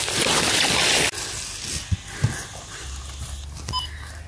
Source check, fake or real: real